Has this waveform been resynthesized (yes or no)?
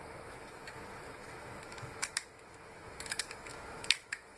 yes